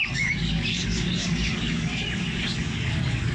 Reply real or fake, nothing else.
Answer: fake